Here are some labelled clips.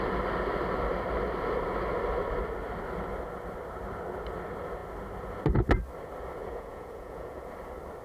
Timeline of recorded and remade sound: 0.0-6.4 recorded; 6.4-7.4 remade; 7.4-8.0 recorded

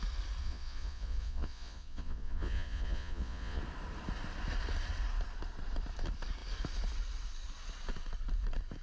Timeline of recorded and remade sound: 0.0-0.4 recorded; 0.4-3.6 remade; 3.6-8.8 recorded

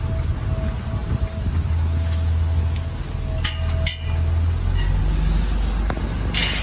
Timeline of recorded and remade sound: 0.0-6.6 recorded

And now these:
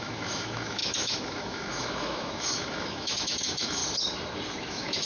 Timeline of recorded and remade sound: 0.0-3.8 remade; 3.8-4.6 recorded; 4.6-5.1 remade